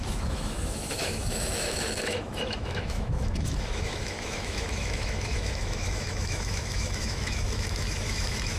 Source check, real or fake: fake